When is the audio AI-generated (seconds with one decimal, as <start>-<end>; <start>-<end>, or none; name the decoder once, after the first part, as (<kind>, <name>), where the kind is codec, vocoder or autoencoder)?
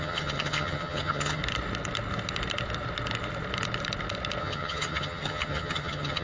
0.0-1.4 (vocoder, HiFi-GAN); 4.4-6.2